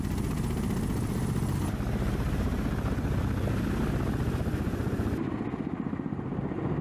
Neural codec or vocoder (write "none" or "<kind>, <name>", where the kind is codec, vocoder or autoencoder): none